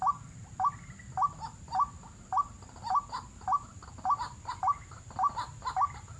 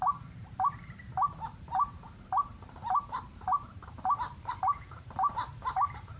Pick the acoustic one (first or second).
first